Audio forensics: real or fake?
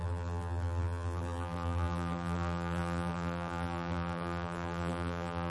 fake